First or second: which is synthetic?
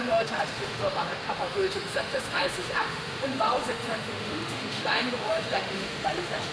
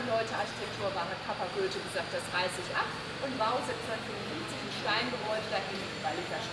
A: first